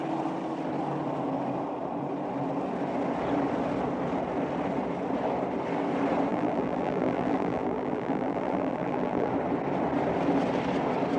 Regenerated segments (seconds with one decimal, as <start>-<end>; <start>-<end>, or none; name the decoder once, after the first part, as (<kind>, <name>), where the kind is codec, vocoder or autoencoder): 6.3-9.3 (vocoder, BigVGAN v2)